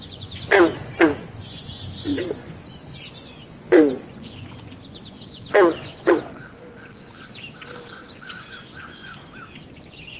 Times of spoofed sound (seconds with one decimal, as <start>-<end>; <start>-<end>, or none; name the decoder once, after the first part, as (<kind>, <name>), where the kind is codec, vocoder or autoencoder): 0.0-7.1 (vocoder, Vocos); 7.9-9.1; 9.7-10.2